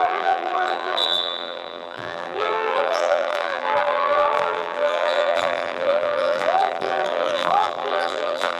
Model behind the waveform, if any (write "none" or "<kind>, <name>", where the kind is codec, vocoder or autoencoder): vocoder, BigVGAN v2